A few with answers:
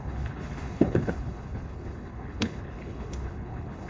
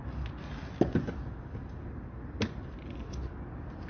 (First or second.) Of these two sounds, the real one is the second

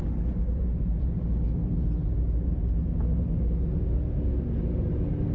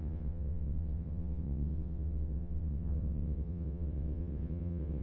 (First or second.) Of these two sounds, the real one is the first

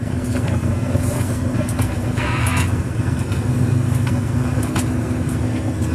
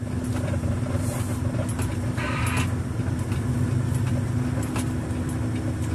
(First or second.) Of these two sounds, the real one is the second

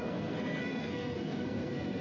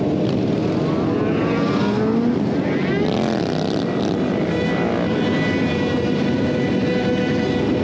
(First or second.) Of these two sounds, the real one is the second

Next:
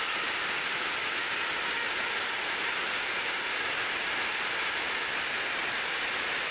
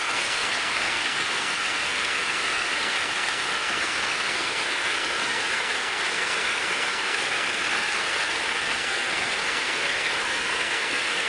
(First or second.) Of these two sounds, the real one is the first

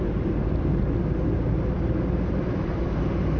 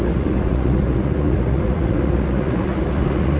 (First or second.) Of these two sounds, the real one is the first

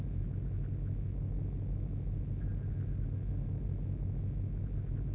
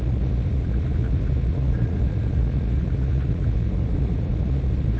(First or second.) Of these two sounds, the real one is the first